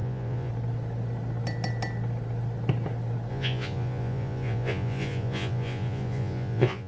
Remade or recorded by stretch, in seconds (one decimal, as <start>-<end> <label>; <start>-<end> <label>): 0.0-0.5 remade; 0.5-3.3 recorded; 3.3-6.9 remade